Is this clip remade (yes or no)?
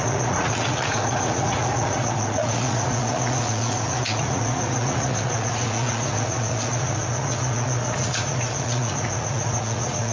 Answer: yes